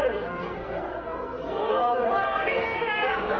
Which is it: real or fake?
fake